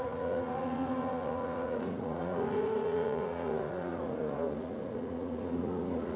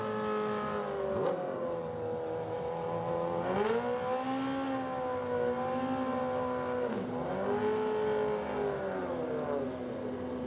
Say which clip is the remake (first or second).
first